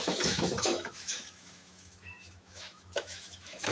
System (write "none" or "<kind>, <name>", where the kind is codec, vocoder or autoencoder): autoencoder, DAC-VAE